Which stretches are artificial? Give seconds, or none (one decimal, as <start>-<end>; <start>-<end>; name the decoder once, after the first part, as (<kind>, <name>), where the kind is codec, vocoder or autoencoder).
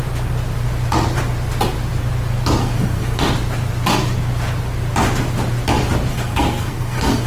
2.6-3.2 (codec, SNAC); 6.1-7.3